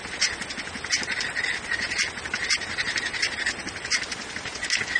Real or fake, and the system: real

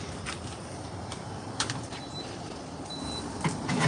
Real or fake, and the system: fake, vocoder, BigVGAN v2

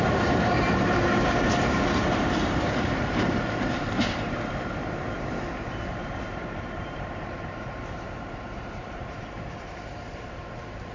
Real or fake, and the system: fake, vocoder, BigVGAN v2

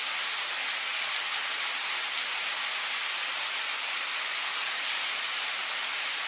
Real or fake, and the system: real